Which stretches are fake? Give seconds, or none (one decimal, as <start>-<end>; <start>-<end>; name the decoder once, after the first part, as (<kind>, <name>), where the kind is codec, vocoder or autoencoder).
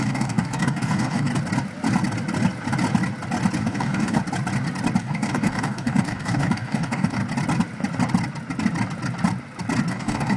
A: 0.0-1.3 (codec, DAC); 3.6-4.2; 5.0-7.2; 9.9-10.4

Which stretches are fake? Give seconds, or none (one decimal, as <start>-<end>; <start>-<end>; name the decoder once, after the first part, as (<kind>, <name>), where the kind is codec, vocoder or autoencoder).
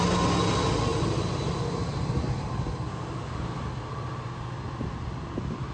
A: none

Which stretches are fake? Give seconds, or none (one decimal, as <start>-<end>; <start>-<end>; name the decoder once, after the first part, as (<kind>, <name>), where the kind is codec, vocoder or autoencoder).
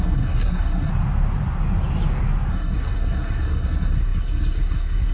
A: 0.0-0.9 (codec, SNAC); 2.5-5.1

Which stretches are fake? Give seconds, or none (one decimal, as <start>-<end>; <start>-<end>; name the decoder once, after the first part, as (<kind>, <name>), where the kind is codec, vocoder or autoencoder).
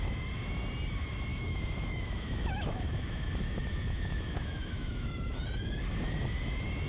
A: 1.3-5.4 (autoencoder, DAC-VAE)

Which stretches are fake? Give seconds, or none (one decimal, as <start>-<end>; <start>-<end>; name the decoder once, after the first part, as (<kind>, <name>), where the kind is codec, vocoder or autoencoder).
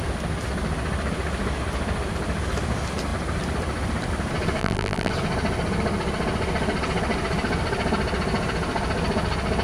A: 4.6-5.1 (vocoder, BigVGAN v2)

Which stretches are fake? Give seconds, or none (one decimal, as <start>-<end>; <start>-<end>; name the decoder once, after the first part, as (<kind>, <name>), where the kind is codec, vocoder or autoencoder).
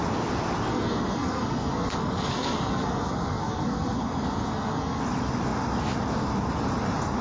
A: 0.7-5.0 (codec, SNAC)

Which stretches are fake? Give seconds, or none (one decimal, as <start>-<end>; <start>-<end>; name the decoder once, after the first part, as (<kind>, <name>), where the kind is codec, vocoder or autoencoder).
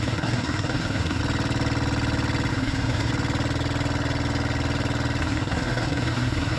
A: 0.0-1.2 (codec, SNAC); 2.5-3.1; 5.2-6.6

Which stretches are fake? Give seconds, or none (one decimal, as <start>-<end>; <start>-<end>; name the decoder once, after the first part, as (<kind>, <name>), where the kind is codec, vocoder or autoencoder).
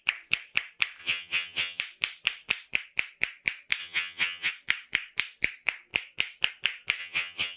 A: 1.0-1.8 (vocoder, HiFi-GAN); 3.8-4.5; 7.0-7.6